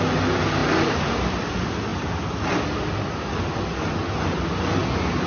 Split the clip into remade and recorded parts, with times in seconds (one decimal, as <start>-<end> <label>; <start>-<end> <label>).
0.0-5.3 recorded